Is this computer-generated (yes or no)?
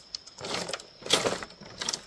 no